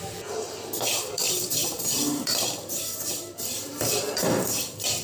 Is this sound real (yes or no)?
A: no